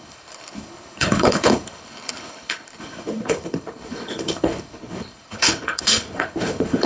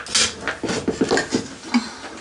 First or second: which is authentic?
second